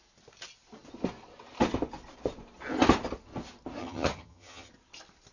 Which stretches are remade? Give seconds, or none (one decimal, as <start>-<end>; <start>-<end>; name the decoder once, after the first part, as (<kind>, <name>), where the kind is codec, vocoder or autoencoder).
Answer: 3.8-4.7 (vocoder, HiFi-GAN)